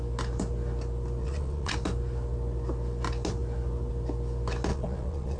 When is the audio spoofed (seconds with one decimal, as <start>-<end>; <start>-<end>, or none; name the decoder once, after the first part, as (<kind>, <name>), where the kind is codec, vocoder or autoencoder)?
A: 1.2-1.7 (vocoder, Vocos); 4.7-5.4